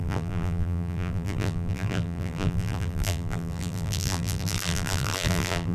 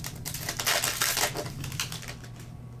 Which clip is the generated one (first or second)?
first